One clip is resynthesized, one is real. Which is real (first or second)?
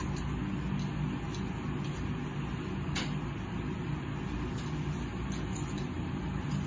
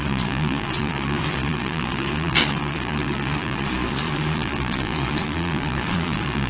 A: first